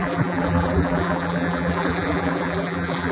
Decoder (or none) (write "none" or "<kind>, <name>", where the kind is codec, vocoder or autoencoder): vocoder, BigVGAN v2